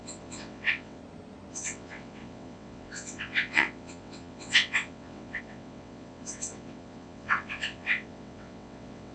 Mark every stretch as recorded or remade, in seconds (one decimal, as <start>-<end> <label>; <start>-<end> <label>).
0.0-1.0 remade; 1.0-1.5 recorded; 1.5-9.1 remade